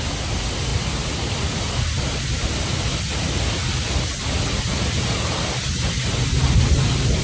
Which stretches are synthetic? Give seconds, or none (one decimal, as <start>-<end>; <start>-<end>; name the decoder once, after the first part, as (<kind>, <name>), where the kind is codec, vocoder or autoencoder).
none